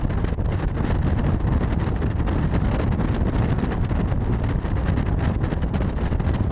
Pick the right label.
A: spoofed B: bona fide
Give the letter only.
B